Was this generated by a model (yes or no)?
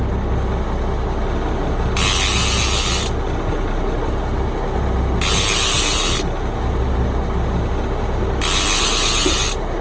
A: no